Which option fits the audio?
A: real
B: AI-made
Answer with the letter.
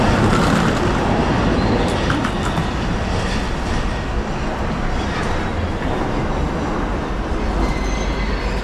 A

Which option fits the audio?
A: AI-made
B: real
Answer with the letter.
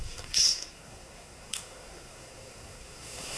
A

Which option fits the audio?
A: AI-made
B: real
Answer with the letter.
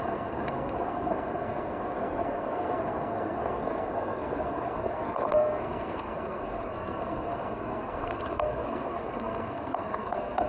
A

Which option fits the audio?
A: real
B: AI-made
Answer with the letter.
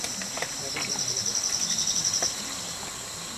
A